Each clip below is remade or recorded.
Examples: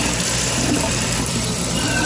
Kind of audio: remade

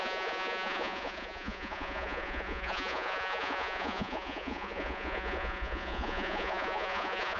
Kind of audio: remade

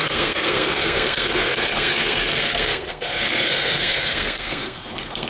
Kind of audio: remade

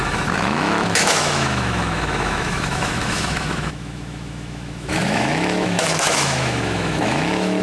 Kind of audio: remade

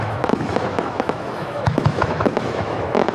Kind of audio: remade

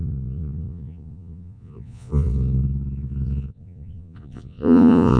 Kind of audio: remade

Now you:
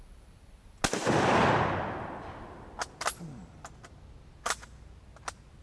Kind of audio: recorded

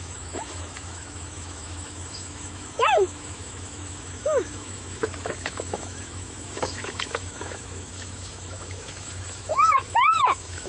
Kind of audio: remade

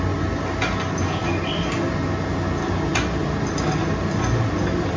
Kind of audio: recorded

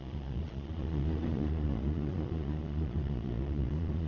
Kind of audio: remade